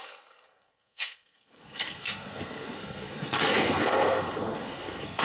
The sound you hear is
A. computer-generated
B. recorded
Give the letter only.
A